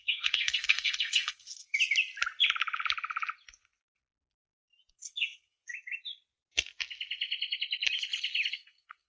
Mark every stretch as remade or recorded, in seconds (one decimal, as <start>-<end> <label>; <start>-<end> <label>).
0.0-1.7 remade; 1.7-4.9 recorded; 4.9-5.6 remade; 5.6-8.5 recorded; 8.5-9.1 remade